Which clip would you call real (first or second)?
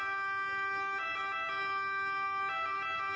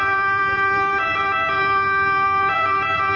first